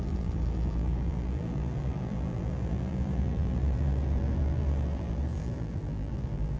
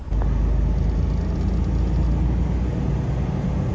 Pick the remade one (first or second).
first